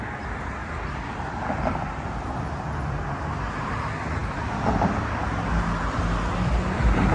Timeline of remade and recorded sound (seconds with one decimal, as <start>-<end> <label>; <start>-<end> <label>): 0.0-7.1 recorded